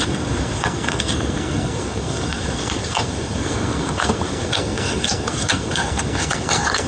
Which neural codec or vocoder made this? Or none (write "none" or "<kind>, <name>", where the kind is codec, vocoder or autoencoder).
codec, SNAC